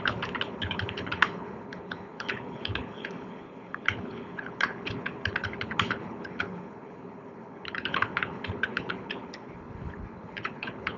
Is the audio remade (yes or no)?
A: yes